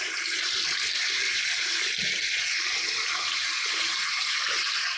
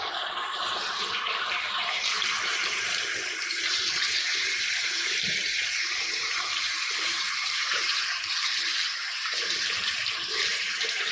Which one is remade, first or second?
second